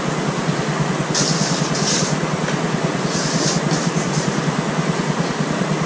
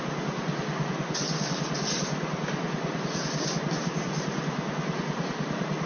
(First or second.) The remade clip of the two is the first